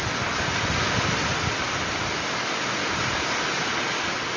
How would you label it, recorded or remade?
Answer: recorded